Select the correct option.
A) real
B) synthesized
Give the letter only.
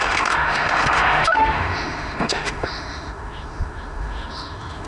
B